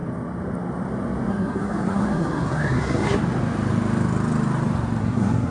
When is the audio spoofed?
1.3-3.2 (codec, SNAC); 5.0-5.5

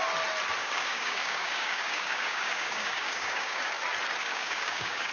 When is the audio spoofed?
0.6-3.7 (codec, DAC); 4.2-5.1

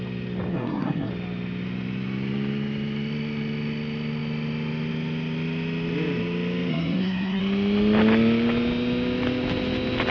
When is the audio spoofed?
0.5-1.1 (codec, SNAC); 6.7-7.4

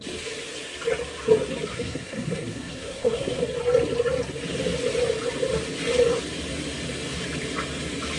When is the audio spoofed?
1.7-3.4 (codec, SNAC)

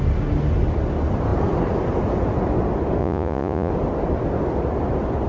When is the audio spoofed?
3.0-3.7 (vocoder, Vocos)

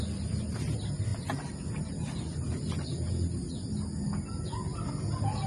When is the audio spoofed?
none

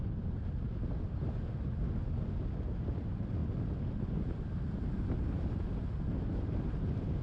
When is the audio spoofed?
none

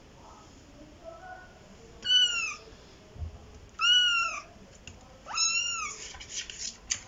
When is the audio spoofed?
none